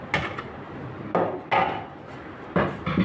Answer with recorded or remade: recorded